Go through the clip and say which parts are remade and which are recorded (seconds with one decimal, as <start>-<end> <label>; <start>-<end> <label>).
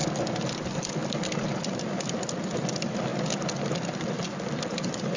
0.0-5.2 recorded